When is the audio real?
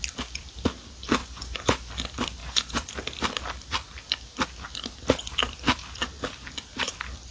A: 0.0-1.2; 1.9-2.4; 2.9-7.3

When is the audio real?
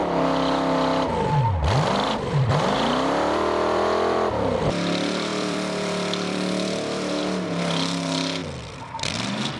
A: 0.0-1.9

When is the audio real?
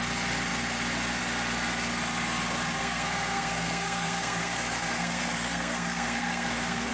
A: 0.0-2.8